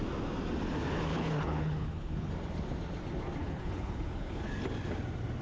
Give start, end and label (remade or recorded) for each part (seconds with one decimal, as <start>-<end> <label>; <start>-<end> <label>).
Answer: 0.0-1.1 recorded; 1.1-2.3 remade; 2.3-3.4 recorded; 3.4-4.5 remade; 4.5-5.4 recorded